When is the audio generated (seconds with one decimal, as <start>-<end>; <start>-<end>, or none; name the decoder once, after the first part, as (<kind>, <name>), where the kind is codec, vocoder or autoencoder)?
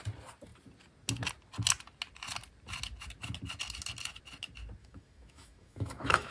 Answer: 4.8-6.3 (autoencoder, DAC-VAE)